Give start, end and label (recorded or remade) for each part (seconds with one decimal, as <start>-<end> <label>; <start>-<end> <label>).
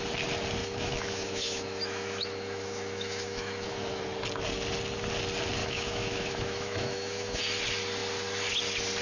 0.0-0.6 recorded; 0.6-4.0 remade; 4.0-5.6 recorded; 5.6-7.4 remade; 7.4-9.0 recorded